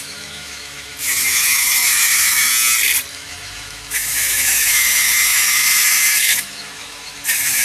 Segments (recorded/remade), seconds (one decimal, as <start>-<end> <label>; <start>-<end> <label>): 0.0-2.5 remade; 2.5-3.1 recorded; 3.1-7.6 remade